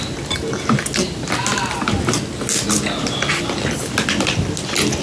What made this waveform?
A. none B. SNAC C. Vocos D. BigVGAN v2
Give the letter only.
A